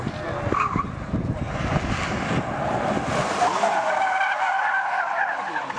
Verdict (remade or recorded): recorded